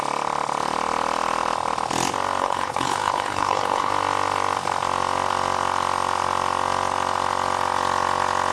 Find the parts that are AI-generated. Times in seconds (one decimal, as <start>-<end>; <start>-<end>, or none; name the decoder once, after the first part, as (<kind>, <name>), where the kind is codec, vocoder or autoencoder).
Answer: 2.4-3.9 (codec, HILCodec)